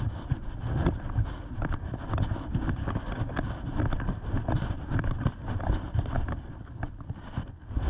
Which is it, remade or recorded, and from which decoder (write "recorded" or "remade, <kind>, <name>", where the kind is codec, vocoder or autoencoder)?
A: recorded